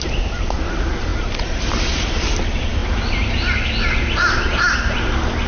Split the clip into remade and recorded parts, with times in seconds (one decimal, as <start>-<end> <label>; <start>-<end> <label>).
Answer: 0.0-5.5 recorded

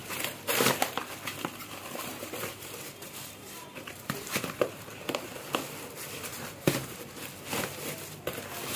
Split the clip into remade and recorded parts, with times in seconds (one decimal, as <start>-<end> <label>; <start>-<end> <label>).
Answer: 0.0-1.1 remade; 1.1-1.8 recorded; 1.8-5.4 remade; 5.4-6.3 recorded; 6.3-7.1 remade; 7.1-8.8 recorded